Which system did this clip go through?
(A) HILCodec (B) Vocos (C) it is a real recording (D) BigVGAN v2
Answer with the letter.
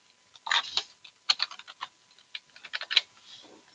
C